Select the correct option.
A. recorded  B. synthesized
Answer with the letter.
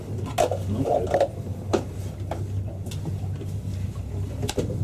A